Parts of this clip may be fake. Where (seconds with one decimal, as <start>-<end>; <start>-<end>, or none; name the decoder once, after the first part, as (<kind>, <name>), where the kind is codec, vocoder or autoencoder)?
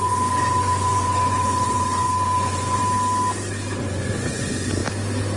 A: 0.0-2.8 (vocoder, Vocos); 3.8-4.8